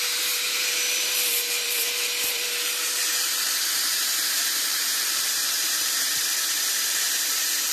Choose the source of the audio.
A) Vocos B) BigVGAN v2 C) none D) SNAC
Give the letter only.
B